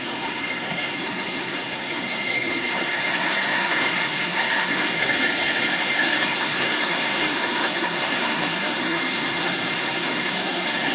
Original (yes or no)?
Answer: no